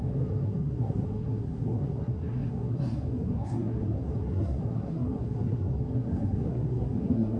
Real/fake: fake